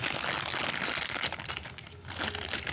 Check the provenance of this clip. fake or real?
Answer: real